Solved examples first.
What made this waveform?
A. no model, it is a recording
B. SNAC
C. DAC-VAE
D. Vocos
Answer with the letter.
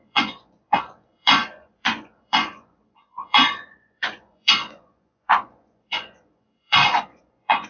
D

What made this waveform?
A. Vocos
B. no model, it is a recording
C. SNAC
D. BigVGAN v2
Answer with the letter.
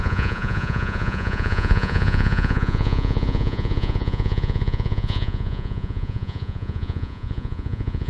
A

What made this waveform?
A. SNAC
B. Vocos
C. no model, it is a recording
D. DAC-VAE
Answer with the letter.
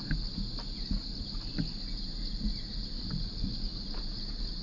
C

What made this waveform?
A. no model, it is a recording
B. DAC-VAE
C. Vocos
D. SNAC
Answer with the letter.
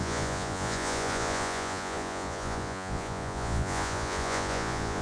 C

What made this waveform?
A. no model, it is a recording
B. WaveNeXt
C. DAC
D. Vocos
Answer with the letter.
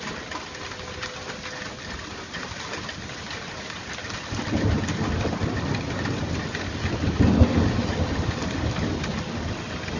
A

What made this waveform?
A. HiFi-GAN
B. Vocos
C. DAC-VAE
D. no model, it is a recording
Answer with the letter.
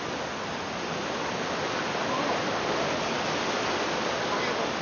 D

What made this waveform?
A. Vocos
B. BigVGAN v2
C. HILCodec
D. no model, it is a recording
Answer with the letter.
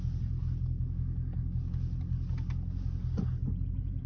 D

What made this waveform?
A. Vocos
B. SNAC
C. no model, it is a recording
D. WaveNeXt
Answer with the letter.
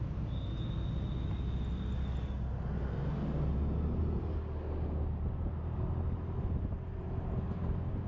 C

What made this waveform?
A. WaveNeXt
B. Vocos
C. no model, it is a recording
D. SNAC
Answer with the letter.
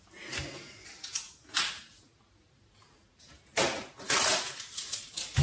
C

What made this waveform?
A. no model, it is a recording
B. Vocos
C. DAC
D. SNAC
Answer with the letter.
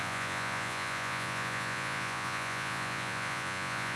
B